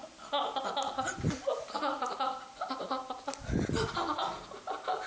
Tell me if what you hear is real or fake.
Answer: real